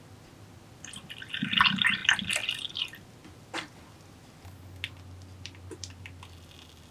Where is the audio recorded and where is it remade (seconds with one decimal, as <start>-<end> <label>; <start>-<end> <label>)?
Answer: 0.0-6.9 recorded